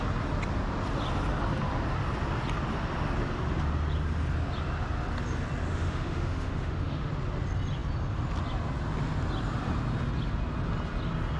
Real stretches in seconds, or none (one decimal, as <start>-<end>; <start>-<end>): 0.0-5.7; 7.1-11.4